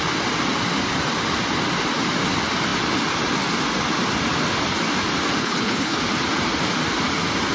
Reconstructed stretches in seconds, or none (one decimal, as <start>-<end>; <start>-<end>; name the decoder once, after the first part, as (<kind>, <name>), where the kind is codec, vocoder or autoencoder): 5.4-6.0 (codec, HILCodec)